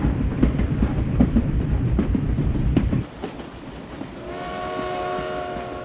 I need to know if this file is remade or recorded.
recorded